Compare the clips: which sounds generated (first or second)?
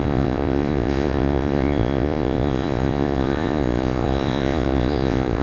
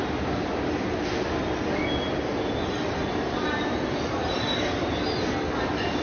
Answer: first